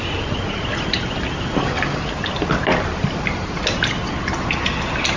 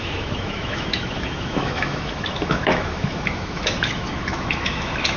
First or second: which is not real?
second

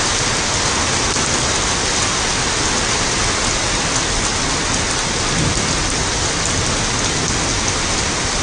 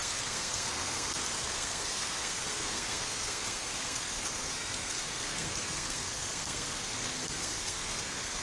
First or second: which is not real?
second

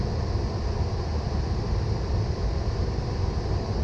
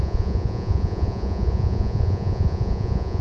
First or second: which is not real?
second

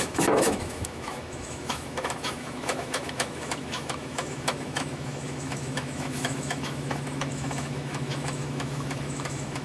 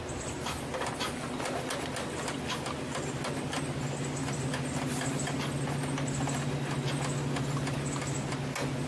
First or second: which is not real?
first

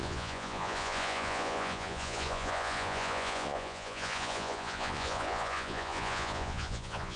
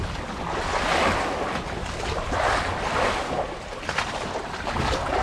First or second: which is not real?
first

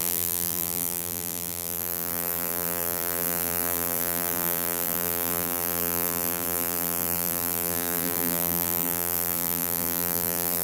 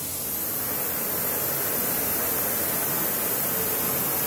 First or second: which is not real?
first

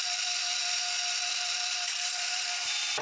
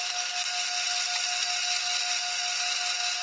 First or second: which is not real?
first